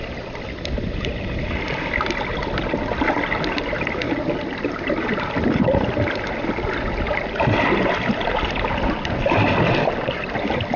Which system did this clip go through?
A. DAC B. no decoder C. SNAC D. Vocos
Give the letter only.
B